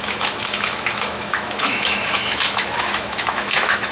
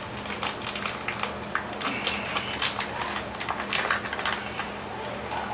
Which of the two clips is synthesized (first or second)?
first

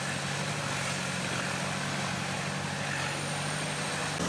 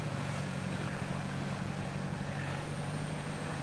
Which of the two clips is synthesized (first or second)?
second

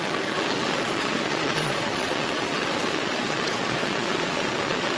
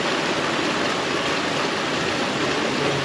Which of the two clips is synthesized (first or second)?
first